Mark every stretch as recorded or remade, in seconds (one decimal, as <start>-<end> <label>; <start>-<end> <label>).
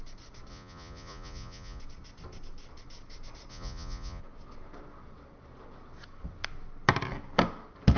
0.0-0.5 recorded; 0.5-1.8 remade; 1.8-3.5 recorded; 3.5-4.2 remade; 4.2-8.0 recorded